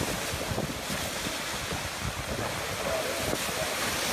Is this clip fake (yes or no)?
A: no